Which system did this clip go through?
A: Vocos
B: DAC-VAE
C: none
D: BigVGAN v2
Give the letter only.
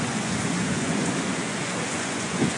A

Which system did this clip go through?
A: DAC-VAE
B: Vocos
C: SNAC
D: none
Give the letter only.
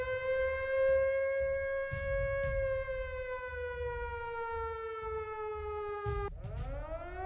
D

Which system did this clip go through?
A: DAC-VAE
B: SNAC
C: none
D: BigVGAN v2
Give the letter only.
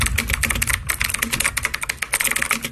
C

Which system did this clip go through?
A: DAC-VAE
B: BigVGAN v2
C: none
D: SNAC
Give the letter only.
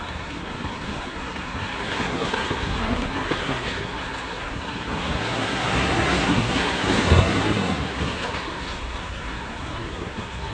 D